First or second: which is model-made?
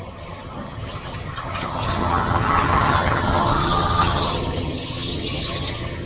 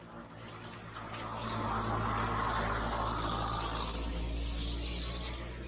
first